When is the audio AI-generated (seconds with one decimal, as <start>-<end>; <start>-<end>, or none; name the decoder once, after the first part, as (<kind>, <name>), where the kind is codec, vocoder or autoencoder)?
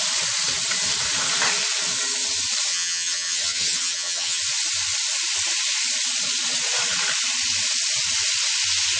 2.7-4.4 (vocoder, HiFi-GAN)